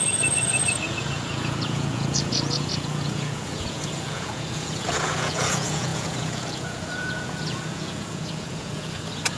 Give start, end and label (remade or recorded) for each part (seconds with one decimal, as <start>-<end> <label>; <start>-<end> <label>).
0.0-9.4 remade